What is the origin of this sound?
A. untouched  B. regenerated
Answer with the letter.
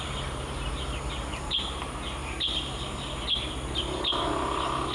A